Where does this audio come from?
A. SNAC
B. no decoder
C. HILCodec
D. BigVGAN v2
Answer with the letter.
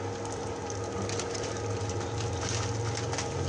B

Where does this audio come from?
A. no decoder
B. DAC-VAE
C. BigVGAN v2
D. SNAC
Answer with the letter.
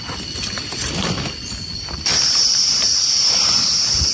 C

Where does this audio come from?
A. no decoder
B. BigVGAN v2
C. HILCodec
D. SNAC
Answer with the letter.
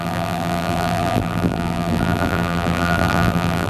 B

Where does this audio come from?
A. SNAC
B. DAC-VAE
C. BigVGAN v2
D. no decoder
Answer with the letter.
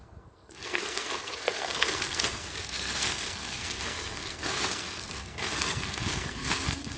A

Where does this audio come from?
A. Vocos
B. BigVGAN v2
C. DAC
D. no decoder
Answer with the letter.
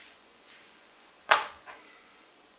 A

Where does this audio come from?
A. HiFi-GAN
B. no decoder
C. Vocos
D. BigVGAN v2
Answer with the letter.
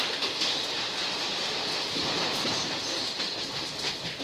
B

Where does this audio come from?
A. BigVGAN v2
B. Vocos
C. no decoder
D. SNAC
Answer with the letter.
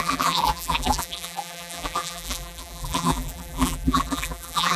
A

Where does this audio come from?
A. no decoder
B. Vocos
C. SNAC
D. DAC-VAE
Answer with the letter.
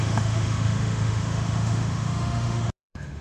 D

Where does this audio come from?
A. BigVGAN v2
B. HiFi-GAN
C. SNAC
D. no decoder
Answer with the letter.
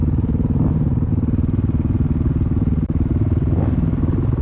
D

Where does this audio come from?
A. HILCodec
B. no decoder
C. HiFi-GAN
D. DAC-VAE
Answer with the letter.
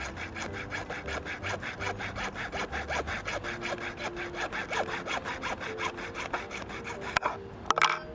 B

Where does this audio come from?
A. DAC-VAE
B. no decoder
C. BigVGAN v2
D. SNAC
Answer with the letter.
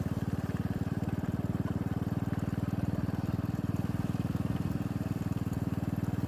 B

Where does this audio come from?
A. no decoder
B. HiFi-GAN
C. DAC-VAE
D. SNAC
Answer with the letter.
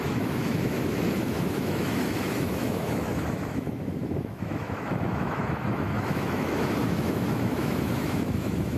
C